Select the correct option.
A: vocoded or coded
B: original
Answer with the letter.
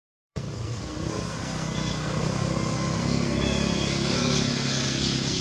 A